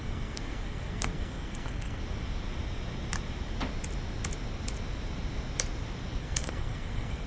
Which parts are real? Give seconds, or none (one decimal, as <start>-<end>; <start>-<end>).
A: 2.0-6.2